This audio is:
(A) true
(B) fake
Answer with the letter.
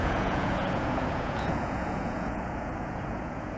B